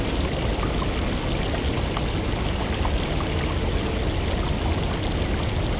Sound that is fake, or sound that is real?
real